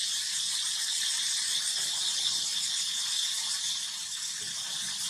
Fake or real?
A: real